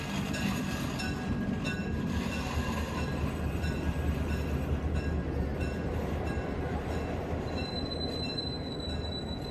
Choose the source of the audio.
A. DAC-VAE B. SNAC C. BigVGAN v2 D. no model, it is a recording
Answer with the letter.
D